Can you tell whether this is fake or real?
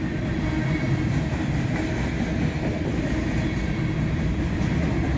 real